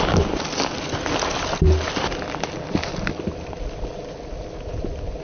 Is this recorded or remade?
recorded